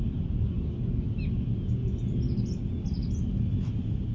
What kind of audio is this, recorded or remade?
recorded